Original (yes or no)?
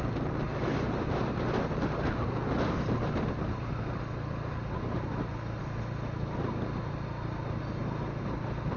yes